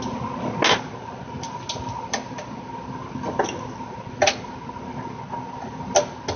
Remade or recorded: recorded